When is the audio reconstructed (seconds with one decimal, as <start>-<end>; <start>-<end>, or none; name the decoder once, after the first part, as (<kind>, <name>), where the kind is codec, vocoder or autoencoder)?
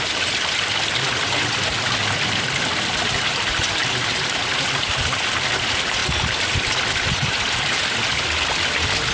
none